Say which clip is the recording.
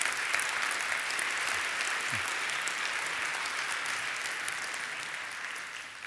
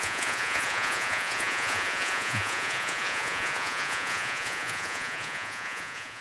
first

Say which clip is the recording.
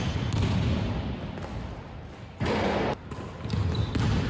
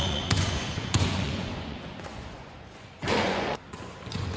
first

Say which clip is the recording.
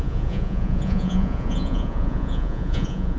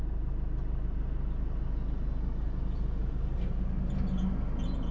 second